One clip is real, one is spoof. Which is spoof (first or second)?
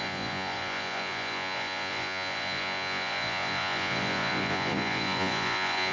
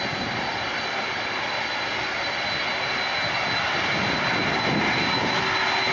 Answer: first